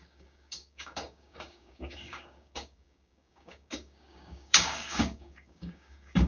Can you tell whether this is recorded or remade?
remade